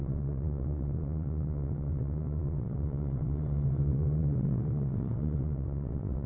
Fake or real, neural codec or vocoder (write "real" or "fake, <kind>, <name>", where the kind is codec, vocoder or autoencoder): fake, vocoder, WaveNeXt